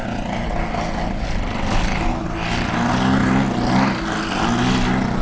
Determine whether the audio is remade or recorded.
recorded